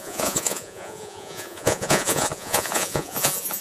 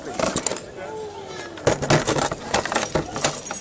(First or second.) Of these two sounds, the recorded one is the second